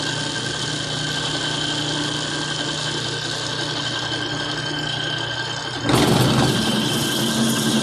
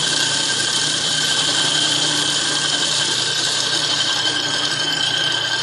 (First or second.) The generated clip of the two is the second